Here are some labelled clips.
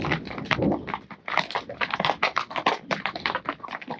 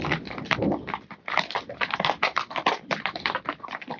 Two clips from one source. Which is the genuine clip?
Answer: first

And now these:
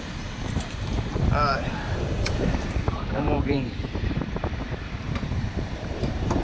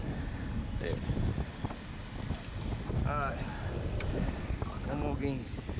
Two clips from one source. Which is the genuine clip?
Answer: second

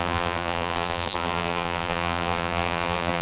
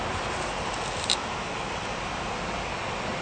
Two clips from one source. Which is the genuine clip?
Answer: second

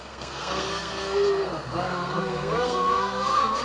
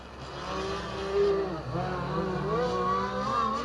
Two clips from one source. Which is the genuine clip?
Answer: second